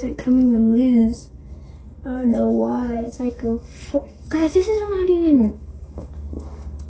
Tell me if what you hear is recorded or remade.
remade